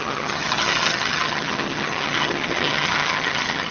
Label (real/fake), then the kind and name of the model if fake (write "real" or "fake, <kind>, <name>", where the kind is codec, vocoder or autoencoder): fake, vocoder, HiFi-GAN